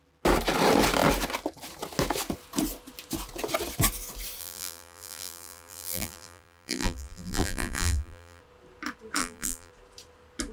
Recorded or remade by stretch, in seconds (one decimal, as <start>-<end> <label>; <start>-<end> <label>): 0.0-4.4 recorded; 4.4-8.4 remade; 8.4-9.2 recorded; 9.2-9.7 remade; 9.7-10.5 recorded